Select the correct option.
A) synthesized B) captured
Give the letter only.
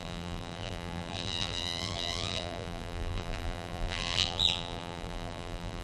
A